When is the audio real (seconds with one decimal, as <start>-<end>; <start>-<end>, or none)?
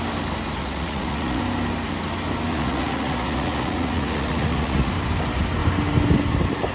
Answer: 0.0-0.6; 1.4-2.5; 4.9-6.7